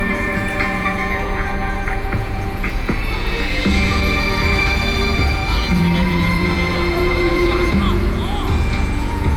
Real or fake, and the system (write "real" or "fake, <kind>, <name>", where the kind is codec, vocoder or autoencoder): fake, vocoder, Vocos